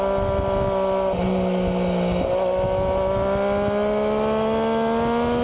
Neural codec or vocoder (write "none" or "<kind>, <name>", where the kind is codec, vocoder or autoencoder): none